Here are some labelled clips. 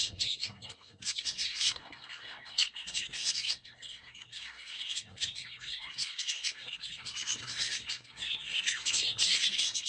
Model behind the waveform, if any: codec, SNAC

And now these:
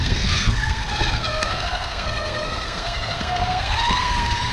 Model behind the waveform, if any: codec, SNAC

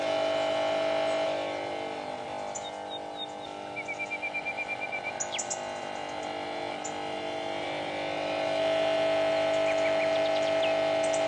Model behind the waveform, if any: none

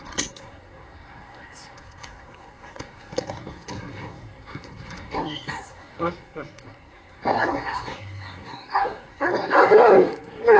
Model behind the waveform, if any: codec, SNAC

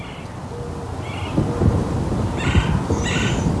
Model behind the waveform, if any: none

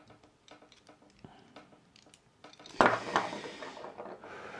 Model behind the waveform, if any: none